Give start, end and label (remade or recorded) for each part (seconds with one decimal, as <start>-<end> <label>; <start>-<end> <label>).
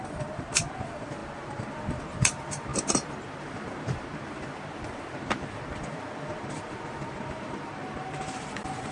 0.0-8.9 remade